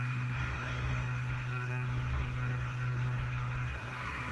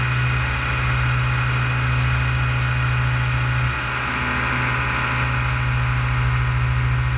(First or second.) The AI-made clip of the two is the first